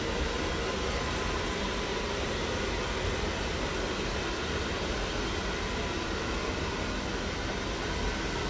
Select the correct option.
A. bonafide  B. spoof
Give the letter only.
A